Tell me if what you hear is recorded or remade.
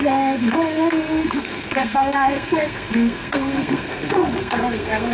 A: remade